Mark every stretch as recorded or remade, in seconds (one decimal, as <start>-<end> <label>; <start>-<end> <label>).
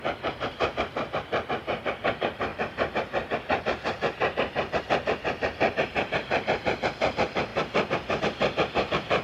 0.0-9.2 remade